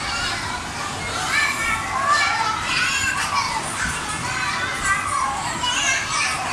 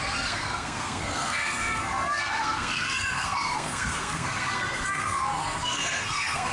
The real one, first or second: first